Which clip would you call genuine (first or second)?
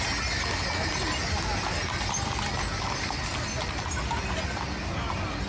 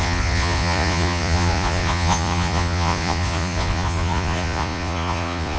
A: first